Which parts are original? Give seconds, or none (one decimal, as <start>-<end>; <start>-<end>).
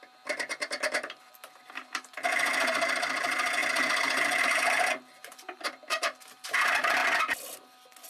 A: 7.0-8.1